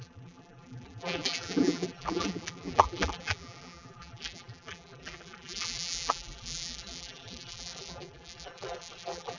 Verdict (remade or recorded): remade